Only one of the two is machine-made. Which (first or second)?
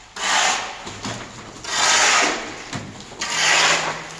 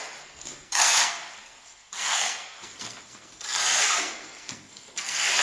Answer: second